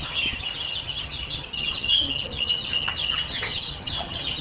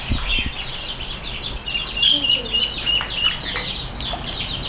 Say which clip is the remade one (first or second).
first